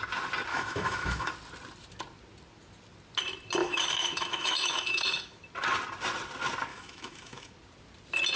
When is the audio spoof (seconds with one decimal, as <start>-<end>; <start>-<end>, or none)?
0.5-1.3; 3.6-5.4; 6.7-7.5